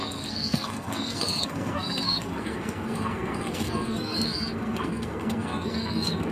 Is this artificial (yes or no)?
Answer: yes